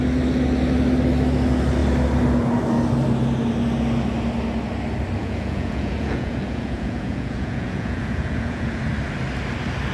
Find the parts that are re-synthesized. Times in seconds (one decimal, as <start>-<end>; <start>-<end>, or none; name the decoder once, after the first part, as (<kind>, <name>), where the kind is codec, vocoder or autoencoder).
5.2-8.8 (vocoder, Vocos)